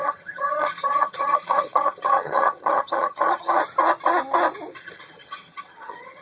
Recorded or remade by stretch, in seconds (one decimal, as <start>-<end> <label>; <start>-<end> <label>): 0.0-3.6 remade; 3.6-4.8 recorded; 4.8-6.2 remade